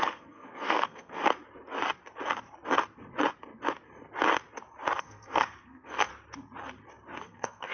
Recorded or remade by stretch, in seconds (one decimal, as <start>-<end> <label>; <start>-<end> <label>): 0.0-1.2 remade; 1.2-5.0 recorded; 5.0-6.1 remade; 6.1-7.2 recorded; 7.2-7.7 remade